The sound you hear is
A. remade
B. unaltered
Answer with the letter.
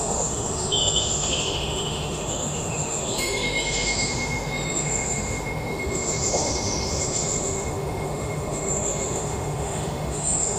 A